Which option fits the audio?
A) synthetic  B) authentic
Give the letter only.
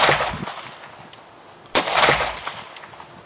B